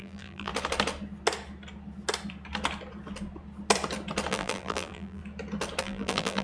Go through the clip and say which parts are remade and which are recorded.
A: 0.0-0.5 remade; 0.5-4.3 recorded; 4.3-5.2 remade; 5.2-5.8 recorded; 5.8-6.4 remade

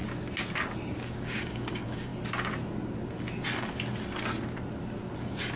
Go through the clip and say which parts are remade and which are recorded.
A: 0.0-0.9 recorded; 0.9-2.1 remade; 2.1-5.6 recorded

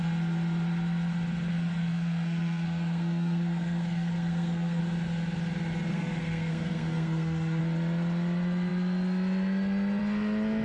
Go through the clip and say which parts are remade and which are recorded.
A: 0.0-1.5 recorded; 1.5-4.8 remade; 4.8-5.9 recorded; 5.9-7.6 remade; 7.6-10.6 recorded